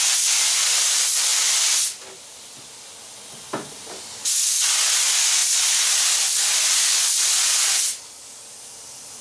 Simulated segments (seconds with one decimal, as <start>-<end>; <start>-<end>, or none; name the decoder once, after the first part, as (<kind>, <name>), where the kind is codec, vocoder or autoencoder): none